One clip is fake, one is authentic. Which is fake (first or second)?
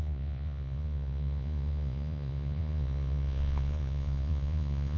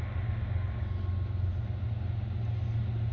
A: first